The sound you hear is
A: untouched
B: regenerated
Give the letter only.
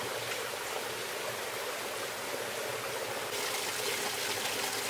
A